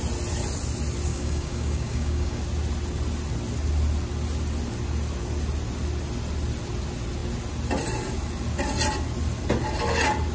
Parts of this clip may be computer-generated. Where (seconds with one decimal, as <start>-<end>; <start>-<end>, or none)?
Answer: 1.1-2.4